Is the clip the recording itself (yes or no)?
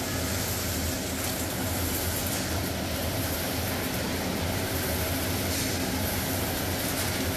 yes